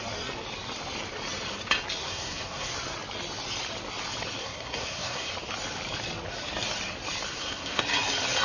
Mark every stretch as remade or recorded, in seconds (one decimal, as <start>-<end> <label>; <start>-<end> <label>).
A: 0.0-2.0 recorded; 2.0-2.7 remade; 2.7-4.4 recorded; 4.4-5.3 remade; 5.3-7.3 recorded; 7.3-7.8 remade; 7.8-8.4 recorded